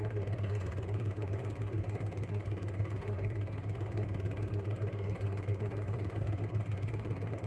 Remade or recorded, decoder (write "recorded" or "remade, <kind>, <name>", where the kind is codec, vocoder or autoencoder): remade, codec, SNAC